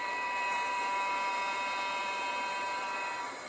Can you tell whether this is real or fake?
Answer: fake